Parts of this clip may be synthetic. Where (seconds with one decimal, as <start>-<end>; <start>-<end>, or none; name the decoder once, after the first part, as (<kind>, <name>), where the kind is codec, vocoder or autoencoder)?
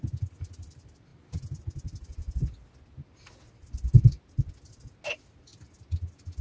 none